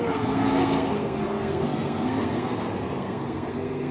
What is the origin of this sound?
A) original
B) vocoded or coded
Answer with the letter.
B